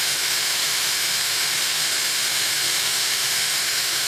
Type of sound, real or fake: fake